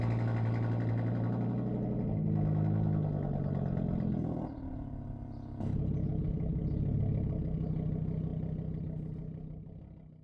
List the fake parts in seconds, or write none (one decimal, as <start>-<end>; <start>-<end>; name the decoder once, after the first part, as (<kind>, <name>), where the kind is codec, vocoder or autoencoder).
none